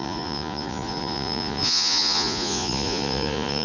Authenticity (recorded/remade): remade